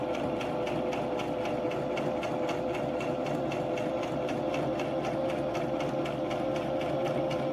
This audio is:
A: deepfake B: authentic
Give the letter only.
B